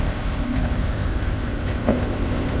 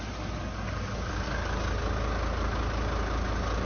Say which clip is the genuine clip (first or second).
second